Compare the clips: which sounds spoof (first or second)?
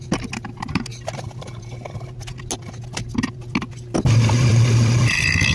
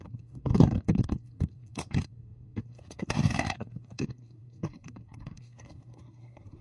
second